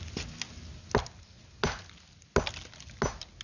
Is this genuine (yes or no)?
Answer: yes